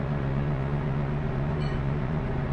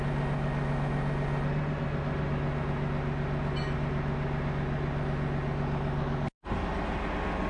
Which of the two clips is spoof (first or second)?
first